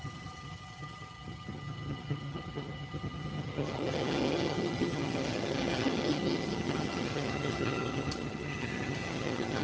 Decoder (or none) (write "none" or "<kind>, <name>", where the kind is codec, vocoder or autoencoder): vocoder, HiFi-GAN